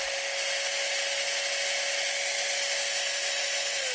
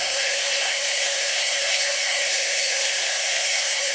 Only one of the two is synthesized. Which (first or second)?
second